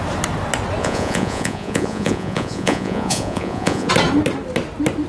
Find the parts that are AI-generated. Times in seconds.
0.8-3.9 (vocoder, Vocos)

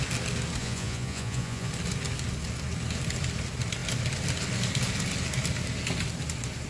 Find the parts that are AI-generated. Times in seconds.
0.6-1.7 (vocoder, Vocos)

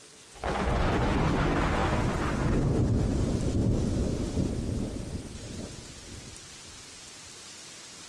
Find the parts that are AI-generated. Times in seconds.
0.0-1.4 (vocoder, Vocos)

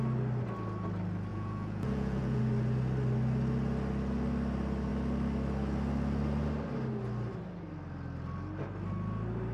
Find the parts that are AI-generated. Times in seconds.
1.3-2.4 (vocoder, Vocos)

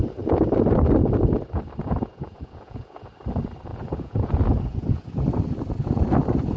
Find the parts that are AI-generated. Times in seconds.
1.8-3.1 (vocoder, Vocos); 3.7-5.2

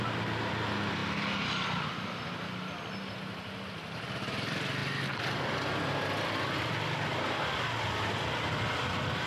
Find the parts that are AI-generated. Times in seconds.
none

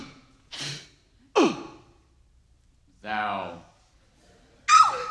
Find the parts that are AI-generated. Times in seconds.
0.0-0.7 (vocoder, Vocos)